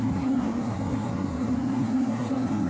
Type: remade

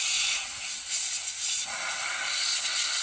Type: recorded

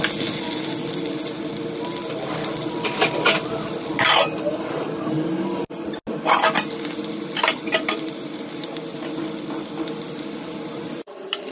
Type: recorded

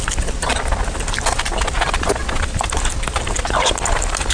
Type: recorded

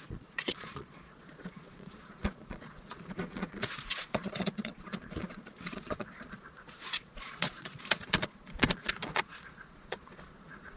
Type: remade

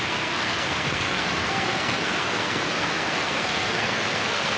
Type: remade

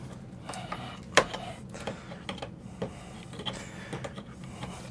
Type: recorded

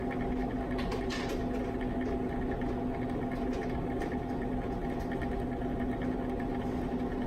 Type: recorded